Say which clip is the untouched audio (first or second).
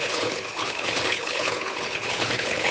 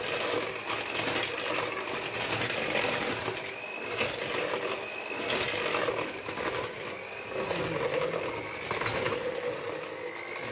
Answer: second